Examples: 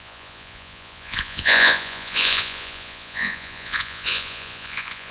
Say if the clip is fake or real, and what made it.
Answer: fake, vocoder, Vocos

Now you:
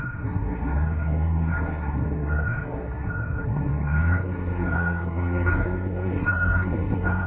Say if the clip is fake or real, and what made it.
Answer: fake, codec, SNAC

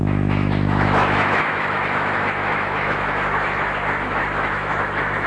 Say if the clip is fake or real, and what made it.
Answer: fake, autoencoder, DAC-VAE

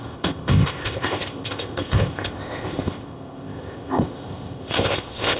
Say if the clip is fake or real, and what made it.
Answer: fake, codec, ZipCodec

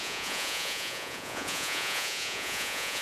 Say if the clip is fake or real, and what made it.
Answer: fake, vocoder, Vocos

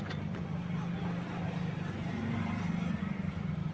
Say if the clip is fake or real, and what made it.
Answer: real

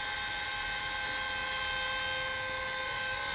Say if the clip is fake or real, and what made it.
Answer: real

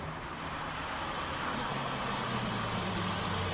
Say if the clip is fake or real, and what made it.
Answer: real